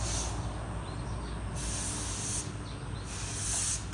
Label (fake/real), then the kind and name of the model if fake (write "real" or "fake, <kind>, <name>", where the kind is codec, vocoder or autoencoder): real